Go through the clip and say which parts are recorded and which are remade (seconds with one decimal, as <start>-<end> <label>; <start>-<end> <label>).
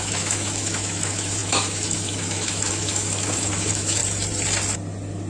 0.0-4.0 remade; 4.0-5.3 recorded